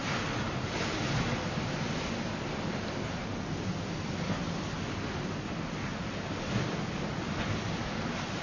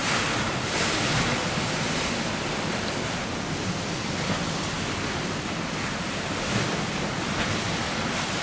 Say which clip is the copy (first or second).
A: second